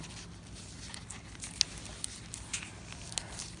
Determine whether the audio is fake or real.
real